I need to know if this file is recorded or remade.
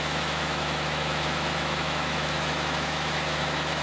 remade